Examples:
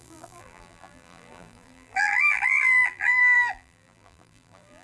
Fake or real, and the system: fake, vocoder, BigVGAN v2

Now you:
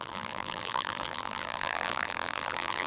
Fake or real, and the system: fake, vocoder, BigVGAN v2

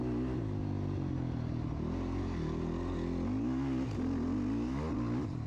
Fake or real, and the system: real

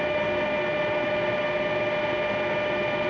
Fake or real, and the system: real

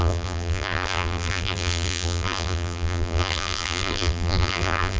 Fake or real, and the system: fake, vocoder, BigVGAN v2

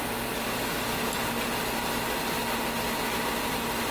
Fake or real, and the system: real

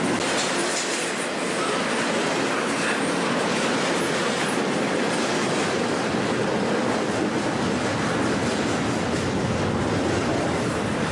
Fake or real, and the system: real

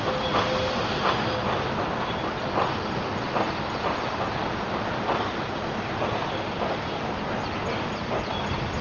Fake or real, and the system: real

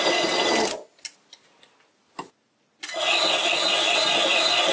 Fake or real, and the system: real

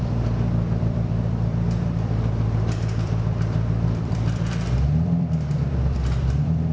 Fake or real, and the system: fake, vocoder, BigVGAN v2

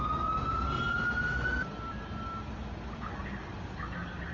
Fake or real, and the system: real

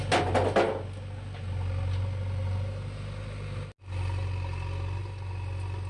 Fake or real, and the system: real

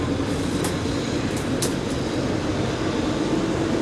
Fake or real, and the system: real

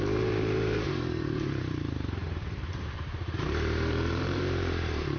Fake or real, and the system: fake, vocoder, BigVGAN v2